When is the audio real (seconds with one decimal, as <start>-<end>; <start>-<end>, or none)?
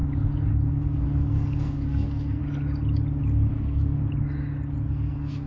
0.0-0.7; 2.4-3.5; 4.0-4.9